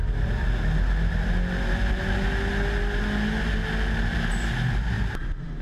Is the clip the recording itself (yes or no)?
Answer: yes